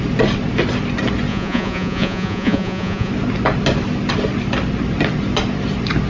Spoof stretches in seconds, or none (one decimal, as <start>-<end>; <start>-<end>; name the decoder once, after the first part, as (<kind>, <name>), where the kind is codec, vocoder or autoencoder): 1.3-3.1 (vocoder, Vocos)